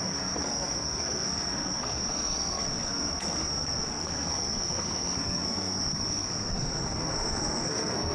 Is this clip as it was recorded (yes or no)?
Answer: no